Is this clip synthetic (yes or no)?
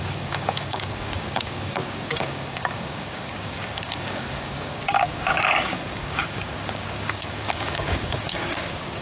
yes